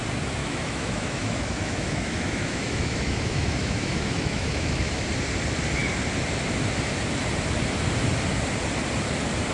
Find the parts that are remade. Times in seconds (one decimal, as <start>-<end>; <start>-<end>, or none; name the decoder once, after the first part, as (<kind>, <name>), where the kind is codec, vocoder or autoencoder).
0.4-5.0 (autoencoder, DAC-VAE)